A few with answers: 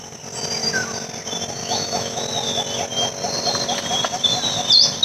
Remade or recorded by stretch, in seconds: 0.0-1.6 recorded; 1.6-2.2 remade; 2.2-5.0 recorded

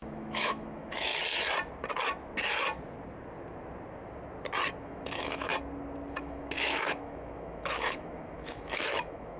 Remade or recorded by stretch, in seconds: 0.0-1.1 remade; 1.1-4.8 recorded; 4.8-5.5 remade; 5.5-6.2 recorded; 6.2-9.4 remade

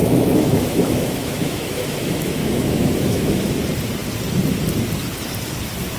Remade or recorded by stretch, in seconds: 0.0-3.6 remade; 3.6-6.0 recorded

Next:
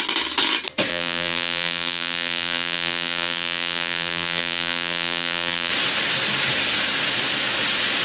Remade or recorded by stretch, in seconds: 0.0-0.9 recorded; 0.9-5.7 remade; 5.7-8.0 recorded

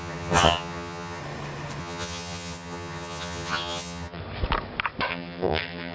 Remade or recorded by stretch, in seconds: 0.0-1.2 remade; 1.2-1.8 recorded; 1.8-4.2 remade; 4.2-5.1 recorded; 5.1-5.9 remade

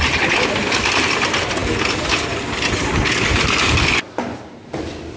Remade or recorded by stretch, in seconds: 0.0-5.2 recorded

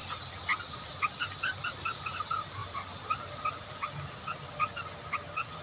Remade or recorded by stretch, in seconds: 0.0-5.6 recorded

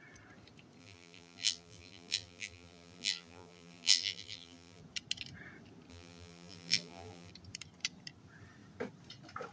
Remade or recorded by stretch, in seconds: 0.0-0.8 recorded; 0.8-4.8 remade; 4.8-5.9 recorded; 5.9-7.3 remade; 7.3-9.5 recorded